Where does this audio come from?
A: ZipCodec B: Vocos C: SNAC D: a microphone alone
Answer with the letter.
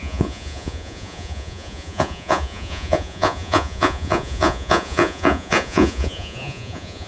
B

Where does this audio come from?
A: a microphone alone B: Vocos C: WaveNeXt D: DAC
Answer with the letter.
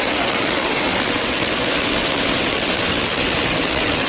C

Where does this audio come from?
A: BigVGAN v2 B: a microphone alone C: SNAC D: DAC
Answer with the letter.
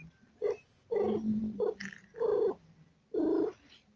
B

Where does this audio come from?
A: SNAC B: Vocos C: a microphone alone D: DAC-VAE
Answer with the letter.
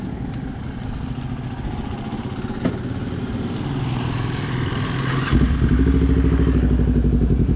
C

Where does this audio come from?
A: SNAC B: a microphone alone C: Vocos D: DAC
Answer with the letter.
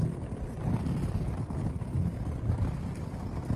B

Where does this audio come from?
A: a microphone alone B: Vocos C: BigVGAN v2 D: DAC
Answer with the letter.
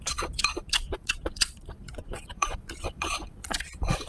B